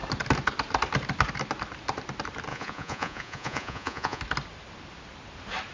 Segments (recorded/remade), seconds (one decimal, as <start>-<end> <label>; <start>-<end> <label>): 0.0-2.5 recorded; 2.5-4.2 remade; 4.2-5.7 recorded